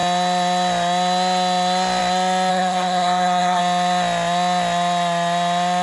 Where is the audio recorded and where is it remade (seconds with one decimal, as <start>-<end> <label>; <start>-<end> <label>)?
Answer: 0.0-2.5 recorded; 2.5-3.6 remade; 3.6-5.8 recorded